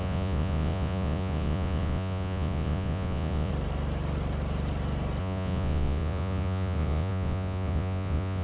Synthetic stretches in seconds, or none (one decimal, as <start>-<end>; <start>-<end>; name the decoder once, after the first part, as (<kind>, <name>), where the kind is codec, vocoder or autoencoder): 0.0-3.5 (vocoder, Vocos); 5.2-8.4